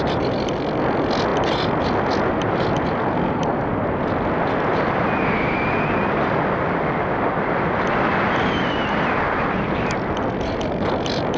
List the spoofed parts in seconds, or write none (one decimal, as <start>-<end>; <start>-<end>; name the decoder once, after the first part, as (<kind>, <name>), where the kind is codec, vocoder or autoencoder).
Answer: none